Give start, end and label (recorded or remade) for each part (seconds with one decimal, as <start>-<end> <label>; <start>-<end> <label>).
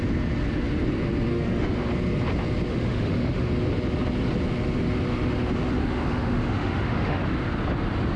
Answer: 0.0-1.3 recorded; 1.3-1.9 remade; 1.9-2.7 recorded; 2.7-3.5 remade; 3.5-5.8 recorded; 5.8-7.2 remade; 7.2-8.2 recorded